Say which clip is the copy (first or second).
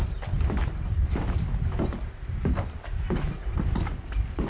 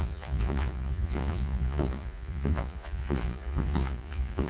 second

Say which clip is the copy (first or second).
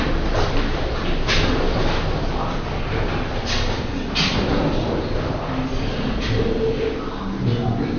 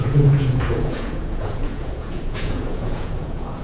second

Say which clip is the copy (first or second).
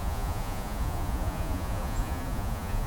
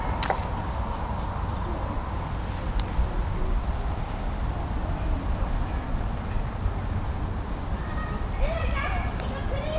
first